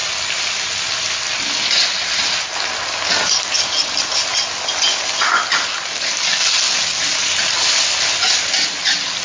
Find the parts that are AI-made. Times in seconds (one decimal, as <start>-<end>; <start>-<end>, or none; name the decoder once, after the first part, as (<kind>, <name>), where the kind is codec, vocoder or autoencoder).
none

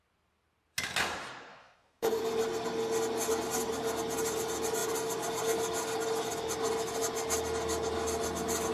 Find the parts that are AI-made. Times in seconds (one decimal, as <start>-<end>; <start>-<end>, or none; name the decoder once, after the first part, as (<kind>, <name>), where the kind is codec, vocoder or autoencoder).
1.5-2.1 (autoencoder, DAC-VAE)

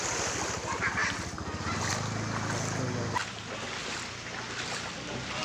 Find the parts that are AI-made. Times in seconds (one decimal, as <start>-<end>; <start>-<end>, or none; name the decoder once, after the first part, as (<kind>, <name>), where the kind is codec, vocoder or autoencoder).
none

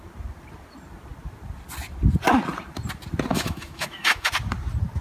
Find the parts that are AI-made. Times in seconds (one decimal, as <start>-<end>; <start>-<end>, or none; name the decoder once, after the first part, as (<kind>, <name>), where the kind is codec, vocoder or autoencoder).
3.3-4.3 (autoencoder, DAC-VAE)

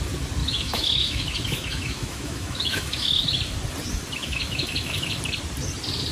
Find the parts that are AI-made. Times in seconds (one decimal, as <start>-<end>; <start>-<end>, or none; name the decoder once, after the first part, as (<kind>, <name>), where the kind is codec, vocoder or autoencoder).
0.4-3.2 (autoencoder, DAC-VAE); 4.2-5.2

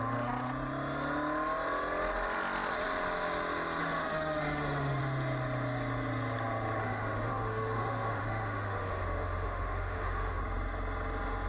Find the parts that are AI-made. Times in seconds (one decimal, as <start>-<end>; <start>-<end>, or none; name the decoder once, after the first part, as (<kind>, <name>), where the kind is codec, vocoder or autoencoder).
3.8-5.0 (autoencoder, DAC-VAE); 6.8-10.4